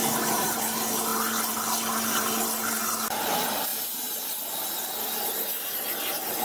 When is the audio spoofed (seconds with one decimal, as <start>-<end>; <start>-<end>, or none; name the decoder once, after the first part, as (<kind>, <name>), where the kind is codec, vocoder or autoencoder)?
0.0-0.6 (vocoder, BigVGAN v2); 3.7-4.3